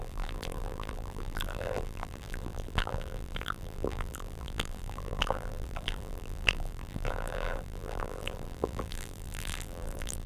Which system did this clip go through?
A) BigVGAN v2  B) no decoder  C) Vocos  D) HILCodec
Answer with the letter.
A